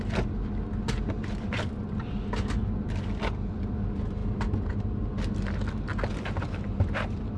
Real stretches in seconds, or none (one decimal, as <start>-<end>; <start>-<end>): 0.0-7.4